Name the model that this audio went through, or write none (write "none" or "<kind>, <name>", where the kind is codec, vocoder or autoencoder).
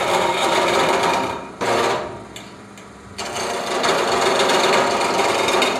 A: vocoder, BigVGAN v2